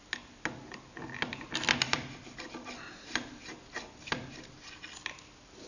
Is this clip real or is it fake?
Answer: real